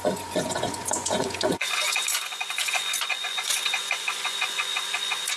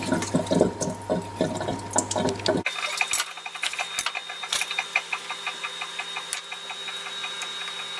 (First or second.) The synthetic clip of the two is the first